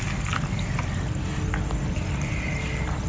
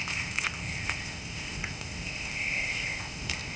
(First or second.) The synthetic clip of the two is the second